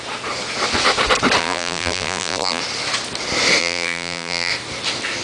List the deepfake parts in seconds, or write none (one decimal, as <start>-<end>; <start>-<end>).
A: 1.4-2.6; 3.6-4.5